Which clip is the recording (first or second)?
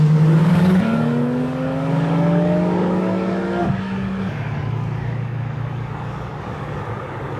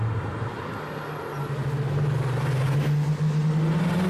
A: second